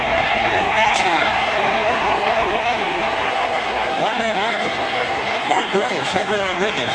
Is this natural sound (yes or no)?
no